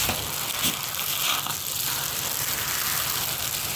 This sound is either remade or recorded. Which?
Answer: recorded